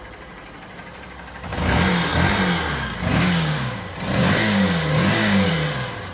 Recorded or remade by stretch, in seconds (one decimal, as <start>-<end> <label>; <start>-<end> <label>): 0.0-1.5 recorded; 1.5-2.1 remade; 2.1-3.1 recorded; 3.1-3.8 remade; 3.8-4.2 recorded; 4.2-5.5 remade; 5.5-6.1 recorded

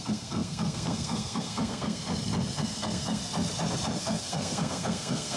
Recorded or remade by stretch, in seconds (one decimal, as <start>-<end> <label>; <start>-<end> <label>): 0.0-2.0 remade; 2.0-2.6 recorded; 2.6-3.2 remade; 3.2-4.0 recorded; 4.0-5.4 remade

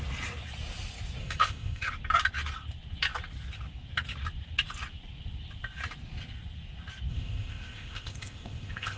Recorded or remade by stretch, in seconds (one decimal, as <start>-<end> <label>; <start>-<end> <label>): 0.0-1.2 recorded; 1.2-1.9 remade; 1.9-7.1 recorded; 7.1-9.0 remade